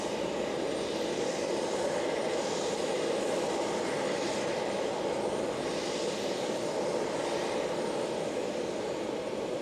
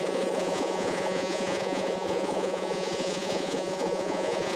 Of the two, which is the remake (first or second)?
second